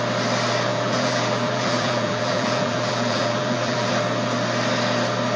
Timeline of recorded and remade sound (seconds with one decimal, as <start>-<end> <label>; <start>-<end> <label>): 0.0-0.7 recorded; 0.7-3.9 remade; 3.9-5.4 recorded